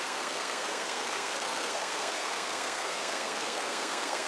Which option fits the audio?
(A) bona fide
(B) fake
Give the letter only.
B